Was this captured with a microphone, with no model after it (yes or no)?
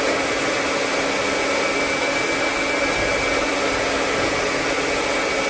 yes